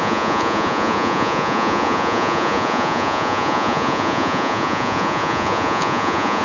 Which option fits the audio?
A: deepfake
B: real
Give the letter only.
A